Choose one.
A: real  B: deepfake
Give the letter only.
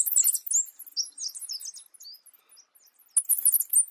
A